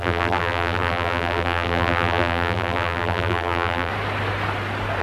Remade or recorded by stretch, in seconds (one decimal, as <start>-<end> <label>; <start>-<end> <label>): 0.0-3.9 remade; 3.9-5.0 recorded

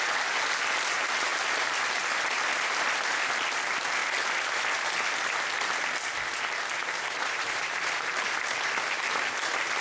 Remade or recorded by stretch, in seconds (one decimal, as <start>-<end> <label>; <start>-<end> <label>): 0.0-6.8 recorded; 6.8-8.1 remade; 8.1-9.8 recorded

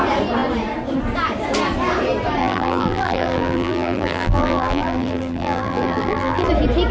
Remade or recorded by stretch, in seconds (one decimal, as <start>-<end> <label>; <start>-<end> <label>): 0.0-2.4 recorded; 2.4-6.5 remade; 6.5-6.9 recorded

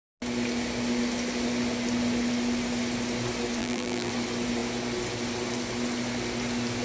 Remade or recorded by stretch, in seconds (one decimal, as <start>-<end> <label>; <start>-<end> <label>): 0.0-3.6 recorded; 3.6-4.1 remade; 4.1-6.8 recorded

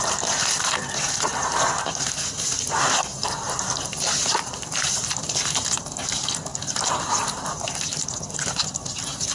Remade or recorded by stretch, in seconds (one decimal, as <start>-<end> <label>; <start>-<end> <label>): 0.0-3.1 recorded; 3.1-5.8 remade; 5.8-9.3 recorded